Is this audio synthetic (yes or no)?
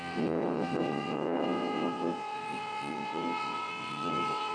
yes